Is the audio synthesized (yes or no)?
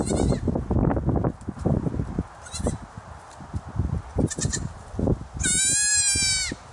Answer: no